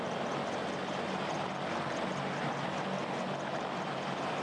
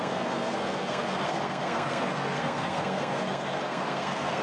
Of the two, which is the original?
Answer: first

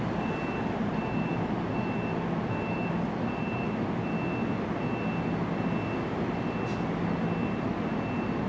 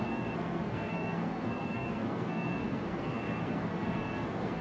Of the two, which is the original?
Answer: first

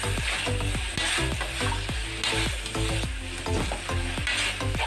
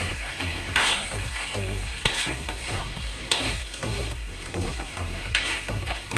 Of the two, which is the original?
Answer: first